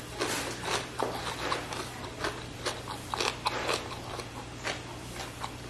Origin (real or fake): real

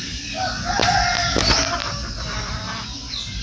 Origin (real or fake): real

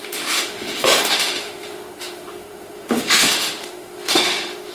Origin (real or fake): fake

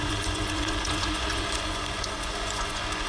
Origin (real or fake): fake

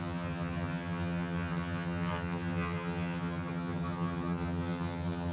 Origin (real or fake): fake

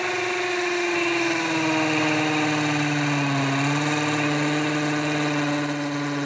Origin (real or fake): real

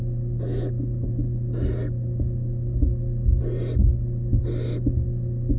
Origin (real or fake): real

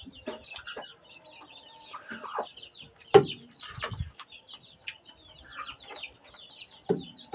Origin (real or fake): real